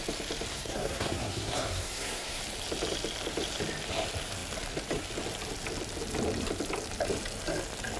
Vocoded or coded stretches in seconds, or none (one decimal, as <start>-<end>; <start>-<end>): 0.5-2.4